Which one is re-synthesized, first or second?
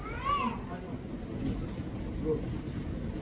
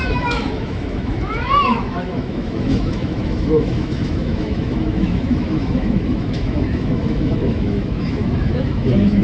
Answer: second